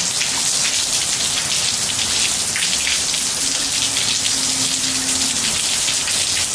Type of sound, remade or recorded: recorded